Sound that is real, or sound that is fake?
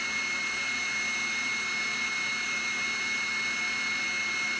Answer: real